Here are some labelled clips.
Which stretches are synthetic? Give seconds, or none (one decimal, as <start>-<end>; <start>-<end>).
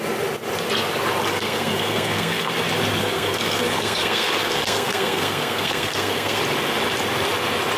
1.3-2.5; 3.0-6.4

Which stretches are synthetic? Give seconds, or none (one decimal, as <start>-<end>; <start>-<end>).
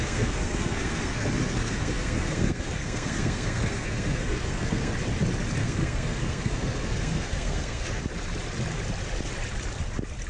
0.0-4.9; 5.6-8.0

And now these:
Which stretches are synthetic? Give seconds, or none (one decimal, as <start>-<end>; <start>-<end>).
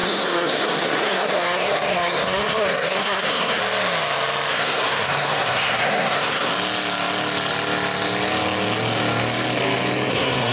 0.0-3.6; 4.5-6.5; 10.1-10.5